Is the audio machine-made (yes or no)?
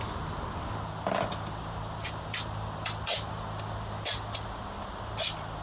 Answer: no